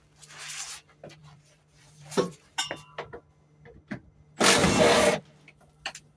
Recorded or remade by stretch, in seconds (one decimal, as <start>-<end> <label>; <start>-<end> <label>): 0.0-1.2 recorded; 1.2-2.7 remade; 2.7-6.2 recorded